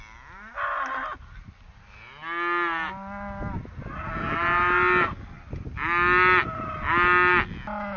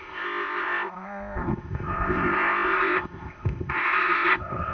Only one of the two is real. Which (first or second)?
first